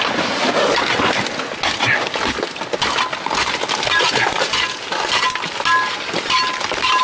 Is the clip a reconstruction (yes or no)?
no